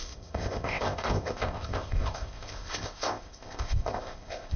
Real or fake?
fake